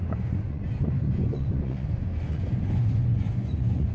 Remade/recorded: remade